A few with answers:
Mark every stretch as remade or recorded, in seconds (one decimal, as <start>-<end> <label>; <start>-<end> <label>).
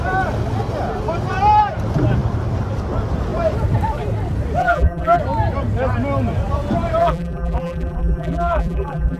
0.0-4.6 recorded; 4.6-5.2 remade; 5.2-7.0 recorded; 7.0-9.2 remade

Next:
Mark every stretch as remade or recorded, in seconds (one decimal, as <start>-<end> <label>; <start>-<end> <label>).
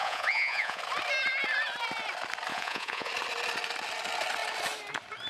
0.0-0.8 remade; 0.8-2.5 recorded; 2.5-3.1 remade; 3.1-5.3 recorded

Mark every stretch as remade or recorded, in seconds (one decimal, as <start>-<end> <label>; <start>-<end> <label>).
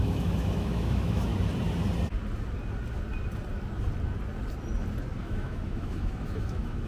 0.0-1.3 remade; 1.3-5.2 recorded; 5.2-6.9 remade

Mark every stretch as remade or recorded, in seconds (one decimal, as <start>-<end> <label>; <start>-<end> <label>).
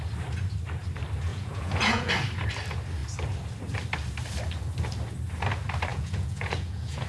0.0-1.3 recorded; 1.3-2.1 remade; 2.1-5.9 recorded; 5.9-7.1 remade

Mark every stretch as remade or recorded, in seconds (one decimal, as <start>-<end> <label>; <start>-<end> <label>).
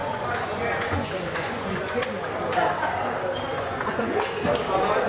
0.0-2.1 remade; 2.1-3.5 recorded; 3.5-4.3 remade; 4.3-5.1 recorded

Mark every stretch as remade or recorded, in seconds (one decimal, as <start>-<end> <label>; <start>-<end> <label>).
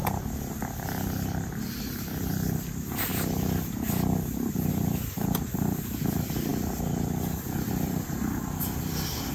0.0-9.3 recorded